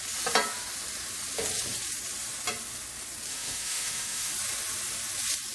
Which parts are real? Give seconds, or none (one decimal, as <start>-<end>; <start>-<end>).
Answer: 0.0-3.3; 4.3-5.5